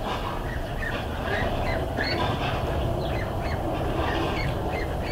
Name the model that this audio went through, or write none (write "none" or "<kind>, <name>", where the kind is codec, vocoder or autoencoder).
none